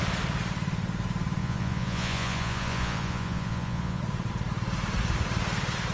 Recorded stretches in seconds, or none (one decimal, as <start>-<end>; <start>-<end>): 0.0-1.4; 4.0-5.9